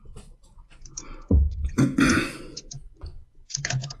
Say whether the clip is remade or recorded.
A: remade